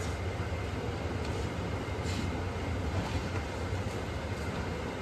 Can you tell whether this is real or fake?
real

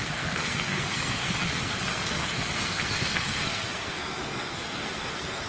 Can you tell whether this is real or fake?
fake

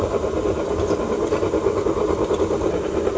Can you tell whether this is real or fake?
real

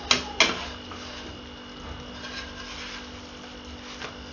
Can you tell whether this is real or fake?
real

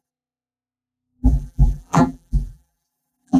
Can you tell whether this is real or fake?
fake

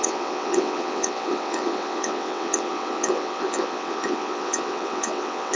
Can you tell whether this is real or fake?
fake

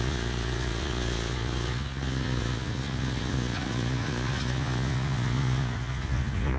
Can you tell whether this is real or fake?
fake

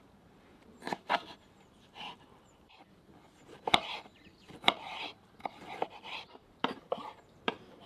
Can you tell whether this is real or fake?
fake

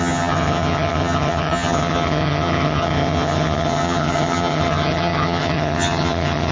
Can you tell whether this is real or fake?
fake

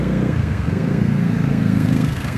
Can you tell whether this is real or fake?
fake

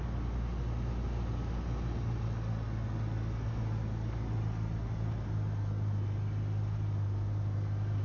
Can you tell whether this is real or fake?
real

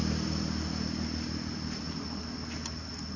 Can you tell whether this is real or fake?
real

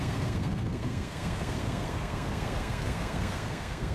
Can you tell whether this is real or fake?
fake